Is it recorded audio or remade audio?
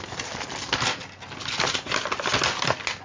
recorded